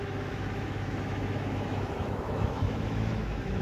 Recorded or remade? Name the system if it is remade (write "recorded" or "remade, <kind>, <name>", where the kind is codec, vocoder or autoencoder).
remade, autoencoder, DAC-VAE